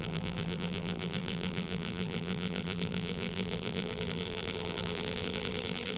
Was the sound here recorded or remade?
remade